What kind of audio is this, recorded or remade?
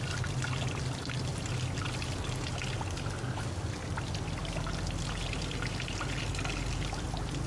recorded